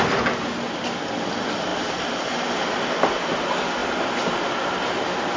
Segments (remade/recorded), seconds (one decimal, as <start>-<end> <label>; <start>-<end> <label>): 0.0-5.4 recorded